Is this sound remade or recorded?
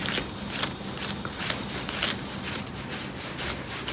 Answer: recorded